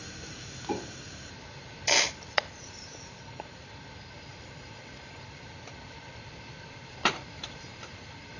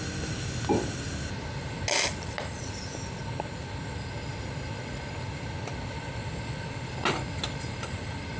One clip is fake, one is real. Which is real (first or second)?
second